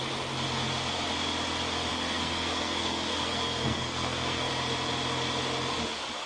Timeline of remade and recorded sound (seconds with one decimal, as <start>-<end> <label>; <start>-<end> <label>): 0.0-1.9 recorded; 1.9-4.5 remade; 4.5-6.3 recorded